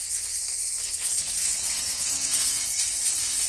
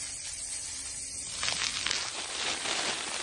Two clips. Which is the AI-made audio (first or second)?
first